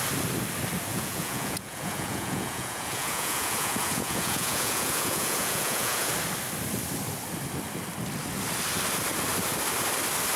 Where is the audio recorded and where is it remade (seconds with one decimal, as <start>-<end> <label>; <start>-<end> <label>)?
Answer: 0.0-0.9 recorded; 0.9-6.1 remade; 6.1-10.4 recorded